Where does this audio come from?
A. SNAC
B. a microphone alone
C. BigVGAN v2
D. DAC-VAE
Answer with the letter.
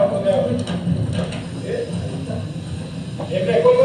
B